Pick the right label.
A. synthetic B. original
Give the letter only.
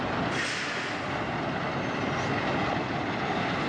B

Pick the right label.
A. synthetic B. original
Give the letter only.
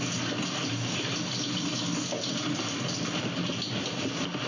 B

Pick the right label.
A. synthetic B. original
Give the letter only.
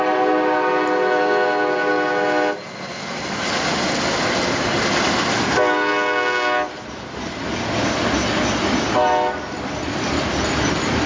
B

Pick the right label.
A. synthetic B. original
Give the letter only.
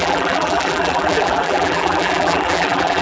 A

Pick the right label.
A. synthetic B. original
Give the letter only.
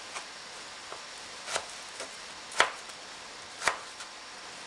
B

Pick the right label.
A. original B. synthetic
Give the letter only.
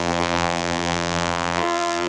B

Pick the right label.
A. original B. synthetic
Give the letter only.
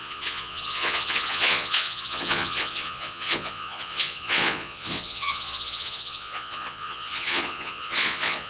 B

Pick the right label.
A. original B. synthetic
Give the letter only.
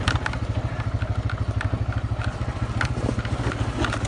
A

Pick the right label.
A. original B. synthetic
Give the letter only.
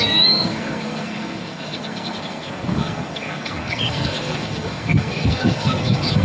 B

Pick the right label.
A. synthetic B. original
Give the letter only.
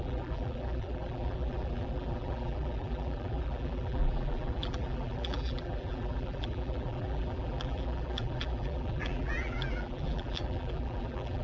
A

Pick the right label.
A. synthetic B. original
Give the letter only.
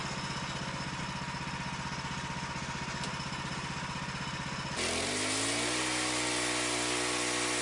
B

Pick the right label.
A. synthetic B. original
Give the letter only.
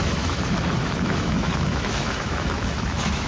A